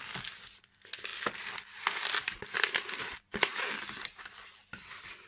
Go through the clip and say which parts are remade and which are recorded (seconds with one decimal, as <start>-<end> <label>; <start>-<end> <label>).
0.0-3.5 recorded; 3.5-5.3 remade